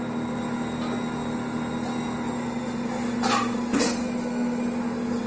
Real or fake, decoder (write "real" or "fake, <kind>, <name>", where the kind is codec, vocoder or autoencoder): real